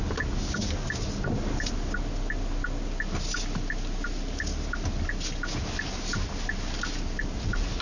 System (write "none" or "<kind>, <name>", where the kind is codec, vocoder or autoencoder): none